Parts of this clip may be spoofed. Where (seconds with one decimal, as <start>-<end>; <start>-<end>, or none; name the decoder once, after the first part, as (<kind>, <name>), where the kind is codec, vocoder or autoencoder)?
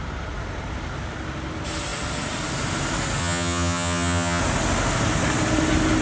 3.2-4.4 (vocoder, HiFi-GAN)